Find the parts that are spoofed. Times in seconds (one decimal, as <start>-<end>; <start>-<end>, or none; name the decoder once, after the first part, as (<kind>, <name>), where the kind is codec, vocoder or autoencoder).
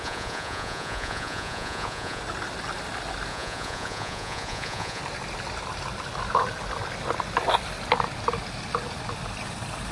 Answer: 0.0-2.2 (vocoder, Vocos); 3.3-5.0